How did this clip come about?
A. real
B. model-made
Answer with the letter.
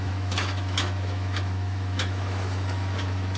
B